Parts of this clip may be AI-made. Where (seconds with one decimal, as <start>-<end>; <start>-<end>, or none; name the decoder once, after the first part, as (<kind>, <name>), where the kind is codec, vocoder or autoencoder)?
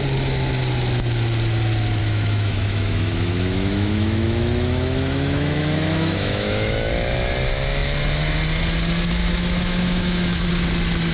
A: 2.0-6.9 (autoencoder, DAC-VAE); 9.2-10.5